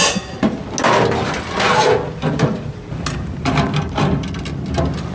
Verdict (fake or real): real